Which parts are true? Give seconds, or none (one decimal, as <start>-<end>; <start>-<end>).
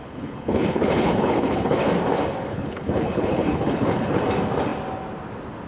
1.9-2.5; 4.2-5.7